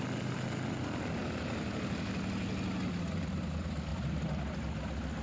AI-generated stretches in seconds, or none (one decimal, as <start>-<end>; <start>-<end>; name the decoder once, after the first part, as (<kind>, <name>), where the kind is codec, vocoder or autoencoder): 3.9-4.6 (vocoder, BigVGAN v2)

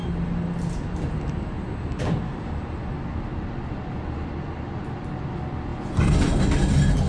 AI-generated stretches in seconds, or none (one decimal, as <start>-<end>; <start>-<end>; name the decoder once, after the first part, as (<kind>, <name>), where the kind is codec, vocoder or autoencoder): none

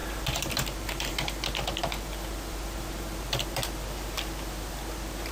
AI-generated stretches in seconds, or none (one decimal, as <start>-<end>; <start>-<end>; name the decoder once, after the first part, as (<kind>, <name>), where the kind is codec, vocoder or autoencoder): 0.0-1.1 (vocoder, BigVGAN v2); 1.8-5.3